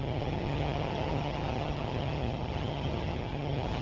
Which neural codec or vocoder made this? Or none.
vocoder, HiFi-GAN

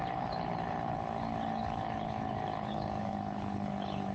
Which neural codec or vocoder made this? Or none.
codec, HILCodec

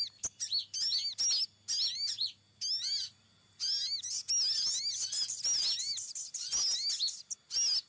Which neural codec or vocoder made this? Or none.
none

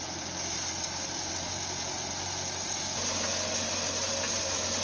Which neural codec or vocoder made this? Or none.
none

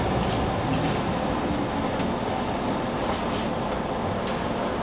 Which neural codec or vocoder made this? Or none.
none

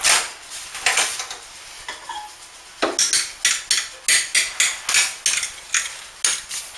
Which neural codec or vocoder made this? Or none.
none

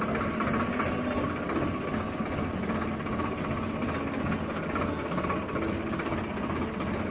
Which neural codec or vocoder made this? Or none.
none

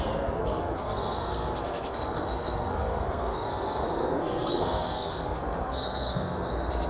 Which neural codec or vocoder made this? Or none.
codec, SNAC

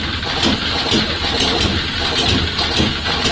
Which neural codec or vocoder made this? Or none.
none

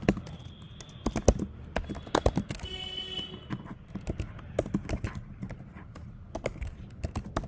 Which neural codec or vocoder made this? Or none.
none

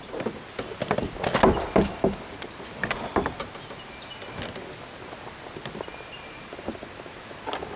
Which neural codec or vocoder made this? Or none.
none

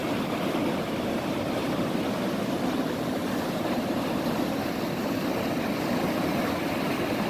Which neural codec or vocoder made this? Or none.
vocoder, BigVGAN v2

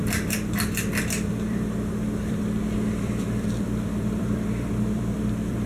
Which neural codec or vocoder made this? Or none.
vocoder, BigVGAN v2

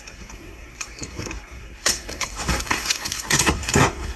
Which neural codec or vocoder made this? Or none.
codec, SNAC